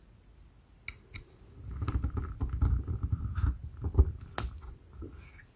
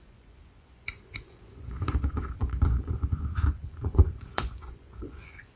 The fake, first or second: second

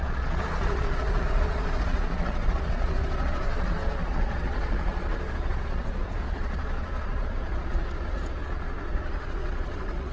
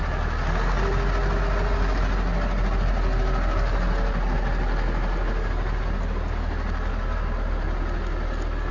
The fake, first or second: first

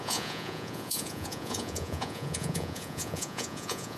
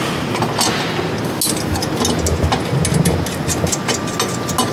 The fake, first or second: first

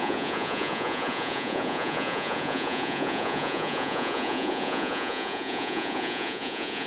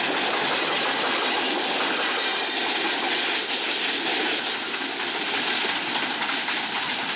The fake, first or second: first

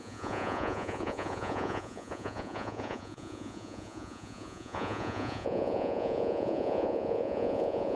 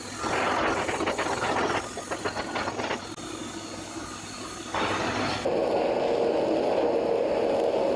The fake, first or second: first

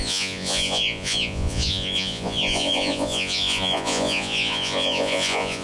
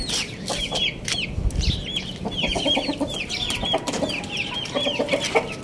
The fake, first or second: first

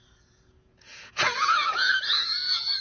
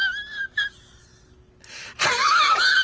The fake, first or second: first